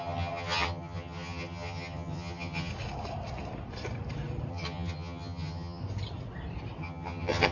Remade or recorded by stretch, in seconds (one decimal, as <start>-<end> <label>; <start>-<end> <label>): 0.0-2.7 remade; 2.7-4.5 recorded; 4.5-5.8 remade; 5.8-6.8 recorded; 6.8-7.5 remade